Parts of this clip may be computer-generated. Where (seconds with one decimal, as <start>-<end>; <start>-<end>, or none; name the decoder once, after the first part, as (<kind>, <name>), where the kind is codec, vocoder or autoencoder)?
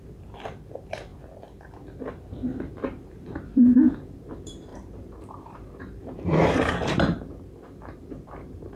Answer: 0.0-1.1 (vocoder, BigVGAN v2); 2.7-8.8